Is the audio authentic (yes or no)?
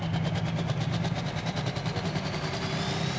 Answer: yes